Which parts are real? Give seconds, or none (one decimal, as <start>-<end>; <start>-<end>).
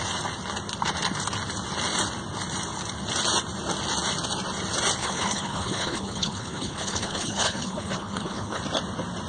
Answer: 0.0-5.0; 8.6-9.3